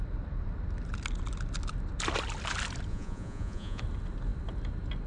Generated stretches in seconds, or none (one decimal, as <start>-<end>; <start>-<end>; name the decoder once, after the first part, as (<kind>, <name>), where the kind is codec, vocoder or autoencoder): 2.9-3.8 (vocoder, Vocos)